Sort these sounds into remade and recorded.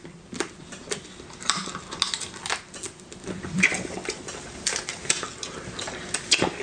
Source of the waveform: recorded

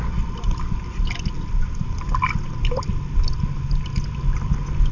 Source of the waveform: recorded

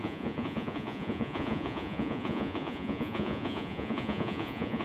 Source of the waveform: remade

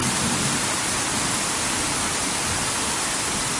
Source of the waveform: recorded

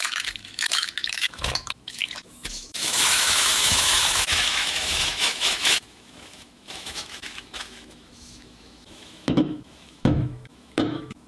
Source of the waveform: remade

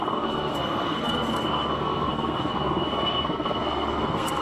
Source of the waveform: remade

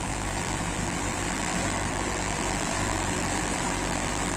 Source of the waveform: remade